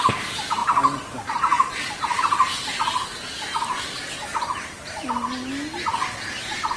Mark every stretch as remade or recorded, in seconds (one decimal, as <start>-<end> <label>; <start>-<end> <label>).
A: 0.0-6.8 recorded